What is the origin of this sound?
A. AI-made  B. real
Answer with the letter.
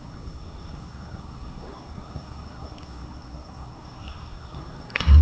A